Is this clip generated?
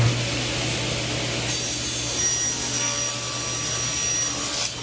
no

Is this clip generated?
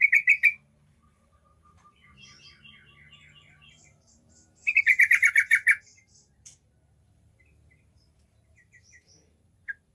yes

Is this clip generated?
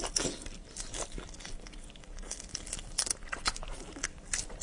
no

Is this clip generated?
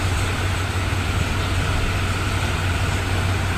no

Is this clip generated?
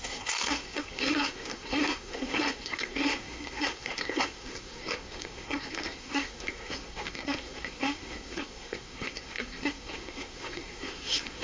yes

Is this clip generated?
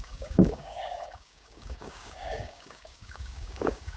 yes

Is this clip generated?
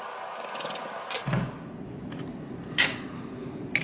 no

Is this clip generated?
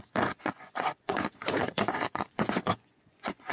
yes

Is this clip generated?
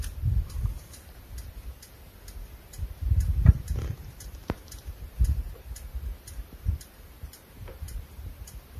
yes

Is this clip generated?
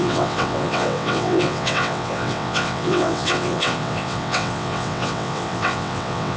yes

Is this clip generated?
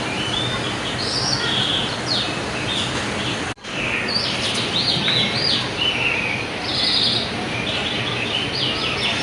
no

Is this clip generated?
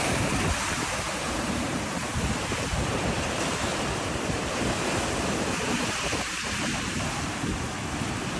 yes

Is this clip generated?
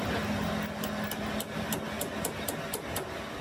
no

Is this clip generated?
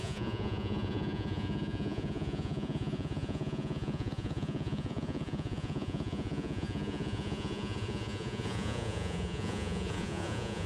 yes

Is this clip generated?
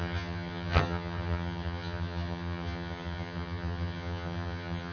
yes